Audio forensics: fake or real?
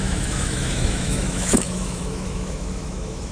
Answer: fake